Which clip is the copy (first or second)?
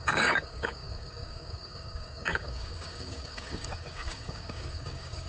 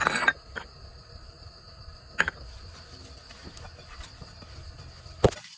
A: first